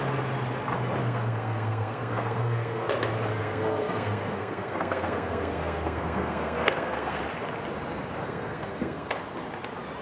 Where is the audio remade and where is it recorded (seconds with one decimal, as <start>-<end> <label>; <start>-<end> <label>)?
0.0-1.0 recorded; 1.0-2.9 remade; 2.9-3.4 recorded; 3.4-7.2 remade; 7.2-8.2 recorded; 8.2-9.1 remade; 9.1-10.0 recorded